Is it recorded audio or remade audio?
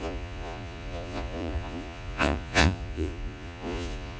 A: remade